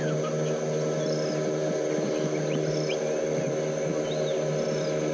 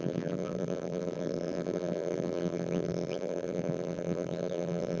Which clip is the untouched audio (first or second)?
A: first